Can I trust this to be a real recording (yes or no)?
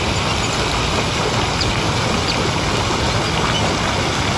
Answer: yes